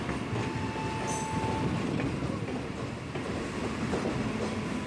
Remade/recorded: recorded